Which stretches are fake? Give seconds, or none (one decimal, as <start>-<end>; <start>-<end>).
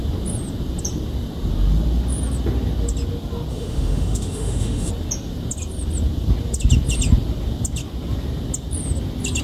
3.5-4.9